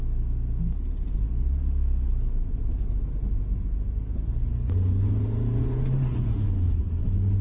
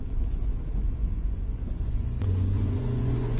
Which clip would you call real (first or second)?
first